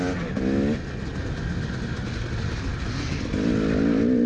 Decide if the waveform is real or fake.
real